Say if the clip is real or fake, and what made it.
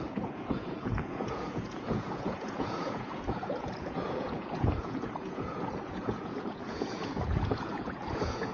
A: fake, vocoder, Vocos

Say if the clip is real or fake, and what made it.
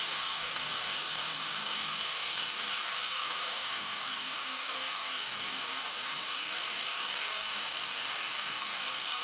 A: fake, codec, DAC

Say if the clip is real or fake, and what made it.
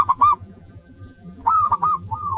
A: fake, vocoder, BigVGAN v2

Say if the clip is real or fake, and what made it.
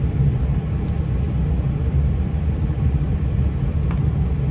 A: real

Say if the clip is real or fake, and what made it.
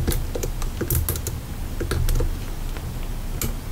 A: real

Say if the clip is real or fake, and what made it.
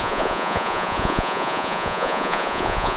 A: fake, vocoder, Vocos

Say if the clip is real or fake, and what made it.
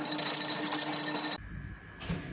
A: real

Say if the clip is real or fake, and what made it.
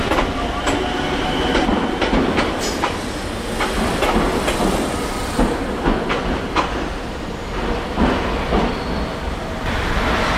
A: real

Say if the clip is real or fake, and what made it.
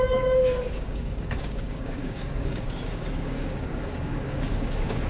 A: fake, codec, DAC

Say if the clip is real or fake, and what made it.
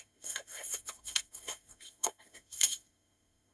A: fake, codec, SNAC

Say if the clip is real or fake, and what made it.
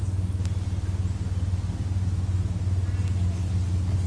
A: real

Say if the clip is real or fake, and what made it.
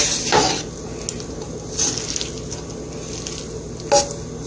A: real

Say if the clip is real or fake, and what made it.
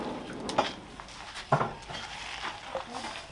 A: real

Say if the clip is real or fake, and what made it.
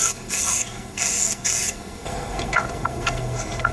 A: fake, codec, SNAC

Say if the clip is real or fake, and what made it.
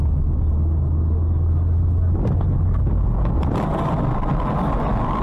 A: real